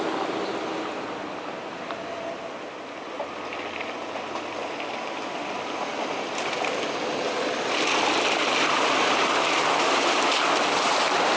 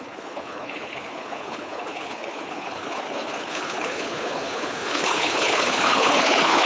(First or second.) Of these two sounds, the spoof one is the second